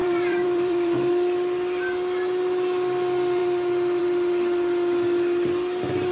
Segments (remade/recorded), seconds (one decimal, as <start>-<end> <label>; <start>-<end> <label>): 0.0-1.1 remade; 1.1-6.1 recorded

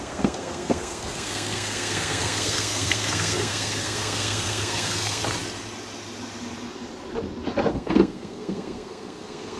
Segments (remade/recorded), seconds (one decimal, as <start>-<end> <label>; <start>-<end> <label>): 0.0-5.2 remade; 5.2-7.7 recorded; 7.7-9.6 remade